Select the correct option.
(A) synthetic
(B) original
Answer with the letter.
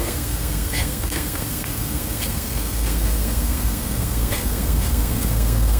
A